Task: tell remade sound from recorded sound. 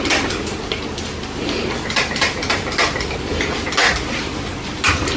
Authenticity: recorded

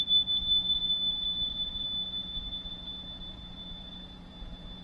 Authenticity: remade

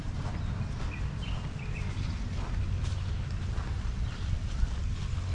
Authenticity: recorded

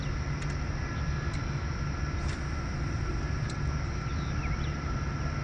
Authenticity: recorded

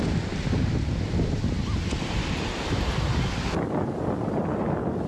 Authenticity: recorded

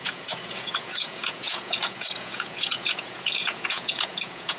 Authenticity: remade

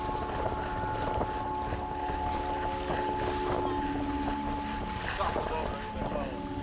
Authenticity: recorded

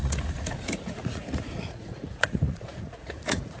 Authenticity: remade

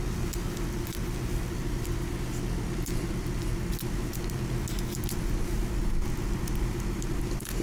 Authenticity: recorded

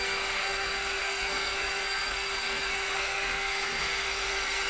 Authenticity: remade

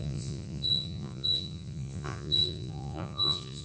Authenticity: remade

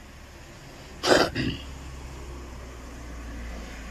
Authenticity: recorded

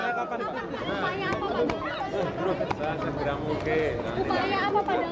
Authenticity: recorded